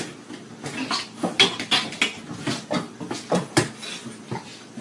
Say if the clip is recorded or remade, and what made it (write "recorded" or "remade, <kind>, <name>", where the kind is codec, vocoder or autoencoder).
recorded